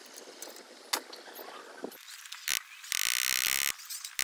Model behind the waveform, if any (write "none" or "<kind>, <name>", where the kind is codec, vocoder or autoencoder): none